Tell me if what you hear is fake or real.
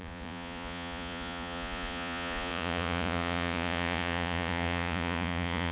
fake